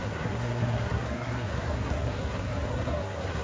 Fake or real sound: fake